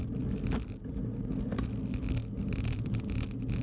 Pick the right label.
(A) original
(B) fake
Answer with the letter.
A